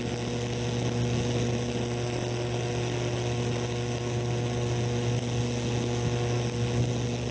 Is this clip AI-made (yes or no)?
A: no